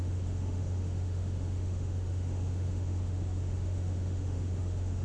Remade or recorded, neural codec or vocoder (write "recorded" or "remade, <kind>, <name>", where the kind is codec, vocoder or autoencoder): remade, autoencoder, DAC-VAE